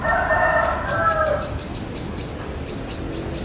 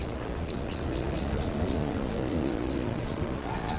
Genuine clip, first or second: first